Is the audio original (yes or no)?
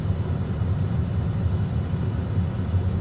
yes